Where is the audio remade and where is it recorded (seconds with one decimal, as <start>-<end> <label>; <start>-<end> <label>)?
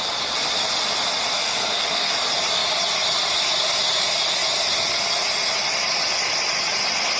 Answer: 0.0-1.3 recorded; 1.3-2.1 remade; 2.1-7.2 recorded